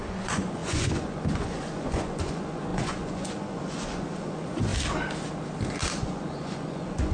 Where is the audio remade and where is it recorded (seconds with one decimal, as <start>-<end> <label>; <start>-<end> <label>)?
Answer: 0.0-4.7 remade; 4.7-5.9 recorded; 5.9-7.1 remade